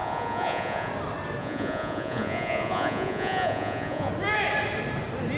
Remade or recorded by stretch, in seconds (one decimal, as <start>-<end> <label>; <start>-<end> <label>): 0.0-0.9 remade; 0.9-1.4 recorded; 1.4-4.1 remade; 4.1-5.4 recorded